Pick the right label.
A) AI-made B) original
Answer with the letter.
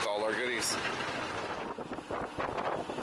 B